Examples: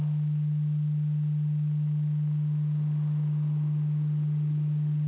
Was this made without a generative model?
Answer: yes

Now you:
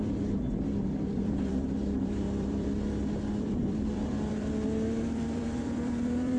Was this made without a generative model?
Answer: no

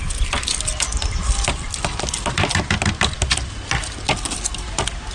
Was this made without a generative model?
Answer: yes